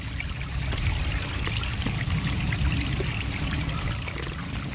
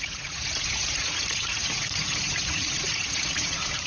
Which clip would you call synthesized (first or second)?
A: second